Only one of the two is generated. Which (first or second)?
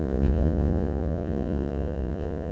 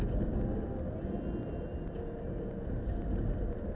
first